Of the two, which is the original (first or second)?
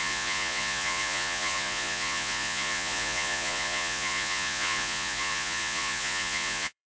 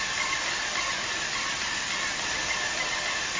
second